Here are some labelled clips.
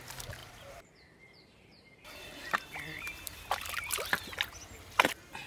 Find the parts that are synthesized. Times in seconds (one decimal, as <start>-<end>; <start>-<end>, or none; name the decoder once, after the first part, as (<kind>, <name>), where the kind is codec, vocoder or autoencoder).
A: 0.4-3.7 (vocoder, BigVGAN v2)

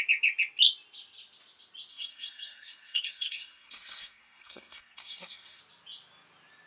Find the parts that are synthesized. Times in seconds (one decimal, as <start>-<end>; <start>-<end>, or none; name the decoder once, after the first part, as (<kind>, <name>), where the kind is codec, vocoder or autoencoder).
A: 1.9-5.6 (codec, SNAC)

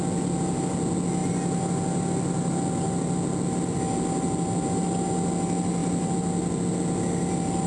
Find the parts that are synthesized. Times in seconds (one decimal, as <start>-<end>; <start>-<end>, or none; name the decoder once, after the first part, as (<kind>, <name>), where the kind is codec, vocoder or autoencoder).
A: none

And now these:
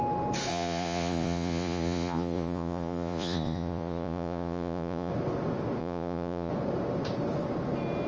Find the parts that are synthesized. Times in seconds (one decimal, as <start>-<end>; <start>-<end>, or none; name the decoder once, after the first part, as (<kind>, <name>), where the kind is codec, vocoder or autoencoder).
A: 0.5-5.1 (vocoder, Vocos); 5.8-6.5

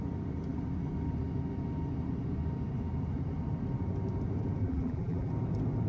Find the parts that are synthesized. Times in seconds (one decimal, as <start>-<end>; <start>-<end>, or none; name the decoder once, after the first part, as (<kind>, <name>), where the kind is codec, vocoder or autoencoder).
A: 4.6-5.3 (vocoder, BigVGAN v2)

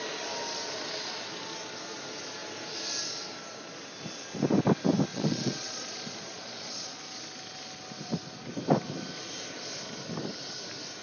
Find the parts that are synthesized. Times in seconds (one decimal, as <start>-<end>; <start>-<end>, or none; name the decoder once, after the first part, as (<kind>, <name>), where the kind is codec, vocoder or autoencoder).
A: 5.1-7.0 (vocoder, Vocos)

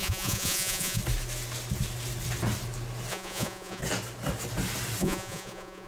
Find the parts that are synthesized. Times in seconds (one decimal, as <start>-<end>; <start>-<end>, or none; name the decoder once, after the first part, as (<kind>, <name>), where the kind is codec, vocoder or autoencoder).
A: 0.0-1.0 (vocoder, Vocos); 3.1-3.8; 5.0-5.9

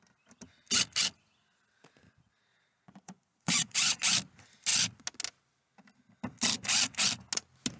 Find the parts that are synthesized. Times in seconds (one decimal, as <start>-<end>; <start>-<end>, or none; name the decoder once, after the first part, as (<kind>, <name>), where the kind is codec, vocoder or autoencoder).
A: 2.5-4.0 (vocoder, Vocos)